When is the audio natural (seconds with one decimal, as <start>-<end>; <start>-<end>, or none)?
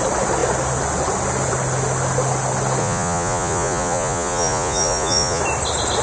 0.0-2.8; 5.4-6.0